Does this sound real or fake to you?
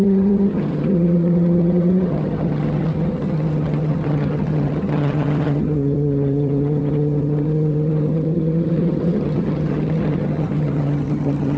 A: fake